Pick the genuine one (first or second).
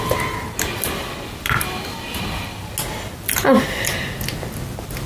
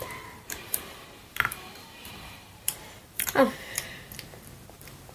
first